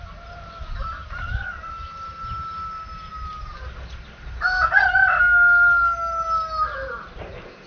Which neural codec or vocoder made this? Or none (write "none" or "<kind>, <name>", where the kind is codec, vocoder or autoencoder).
none